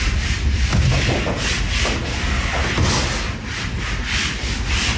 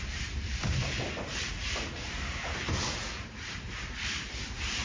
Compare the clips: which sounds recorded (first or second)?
first